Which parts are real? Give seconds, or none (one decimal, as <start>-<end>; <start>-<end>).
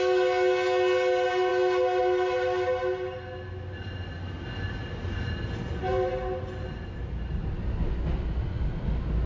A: 0.0-9.3